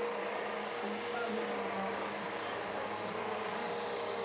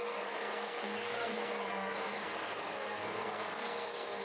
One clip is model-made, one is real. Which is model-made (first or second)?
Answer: second